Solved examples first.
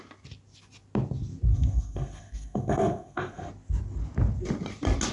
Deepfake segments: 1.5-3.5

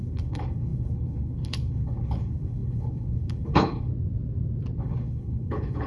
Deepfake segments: 0.0-3.9; 4.8-5.9